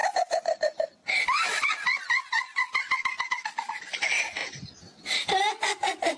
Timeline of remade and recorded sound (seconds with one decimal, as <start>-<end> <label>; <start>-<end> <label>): 0.0-6.2 recorded